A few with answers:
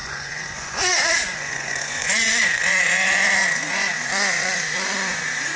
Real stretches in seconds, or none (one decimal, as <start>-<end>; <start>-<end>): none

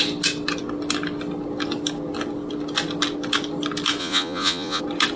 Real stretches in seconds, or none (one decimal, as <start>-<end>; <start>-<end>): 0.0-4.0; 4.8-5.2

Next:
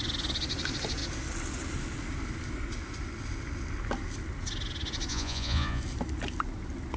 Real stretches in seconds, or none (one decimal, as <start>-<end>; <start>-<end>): 0.0-5.1; 5.8-7.0

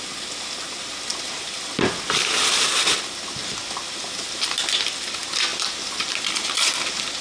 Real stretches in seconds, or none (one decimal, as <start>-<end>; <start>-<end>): 0.0-7.2

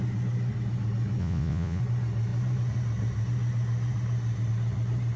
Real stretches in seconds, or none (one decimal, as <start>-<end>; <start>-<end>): 0.0-1.2; 1.8-5.2